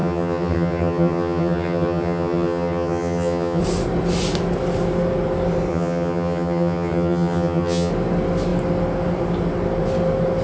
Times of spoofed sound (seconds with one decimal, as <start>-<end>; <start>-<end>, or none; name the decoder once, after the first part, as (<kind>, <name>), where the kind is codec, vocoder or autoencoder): 0.0-3.6 (vocoder, HiFi-GAN); 5.7-7.9